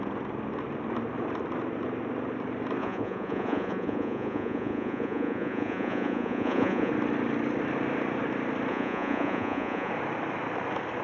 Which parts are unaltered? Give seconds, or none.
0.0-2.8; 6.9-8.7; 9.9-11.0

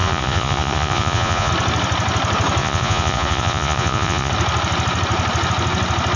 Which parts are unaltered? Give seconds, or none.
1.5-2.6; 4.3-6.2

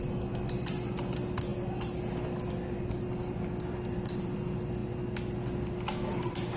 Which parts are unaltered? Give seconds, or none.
0.0-6.6

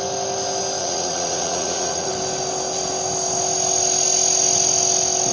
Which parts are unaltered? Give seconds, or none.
0.0-0.8; 2.1-5.3

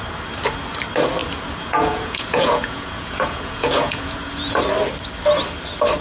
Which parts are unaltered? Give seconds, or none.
0.0-1.2; 4.5-6.0

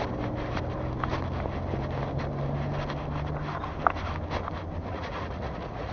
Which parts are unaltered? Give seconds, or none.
0.0-4.9

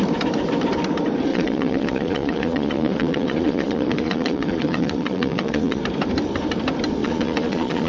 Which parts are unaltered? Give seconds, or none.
0.0-1.3; 5.8-7.0

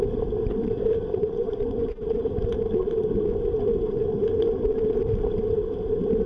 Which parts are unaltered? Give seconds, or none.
0.0-1.2; 2.4-6.3